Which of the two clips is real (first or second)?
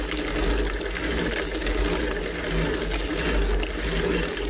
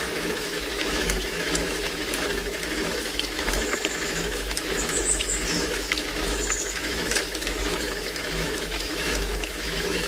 first